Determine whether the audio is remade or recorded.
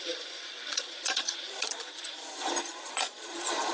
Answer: remade